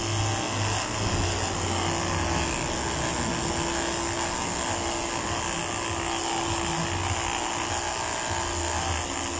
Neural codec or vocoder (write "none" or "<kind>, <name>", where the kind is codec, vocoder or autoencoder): none